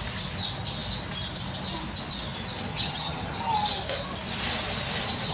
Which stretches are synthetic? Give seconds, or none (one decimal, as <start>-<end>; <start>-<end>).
2.7-3.4